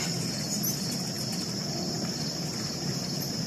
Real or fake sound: fake